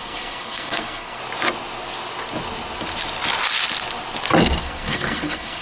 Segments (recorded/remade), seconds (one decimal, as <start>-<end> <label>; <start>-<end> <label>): 0.0-1.2 remade; 1.2-4.6 recorded; 4.6-5.6 remade